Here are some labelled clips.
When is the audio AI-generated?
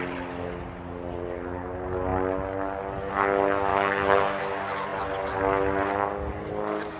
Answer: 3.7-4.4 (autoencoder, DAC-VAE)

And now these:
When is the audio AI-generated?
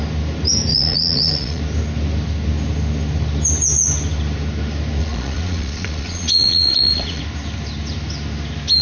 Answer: 0.7-1.6 (vocoder, Vocos); 5.0-7.2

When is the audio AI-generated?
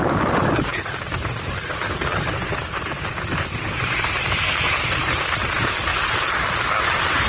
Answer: 0.7-5.1 (vocoder, BigVGAN v2)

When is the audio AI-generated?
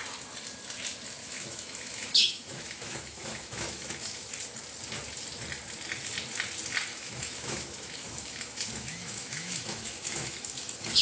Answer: 1.2-4.3 (autoencoder, DAC-VAE); 6.9-11.0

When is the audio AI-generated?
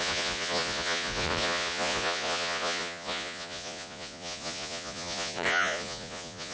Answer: 0.0-6.5 (vocoder, Vocos)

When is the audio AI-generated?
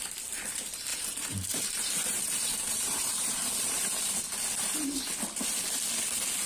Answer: 0.9-4.1 (vocoder, BigVGAN v2)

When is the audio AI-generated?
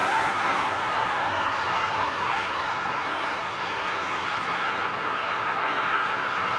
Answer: 0.0-6.6 (codec, SNAC)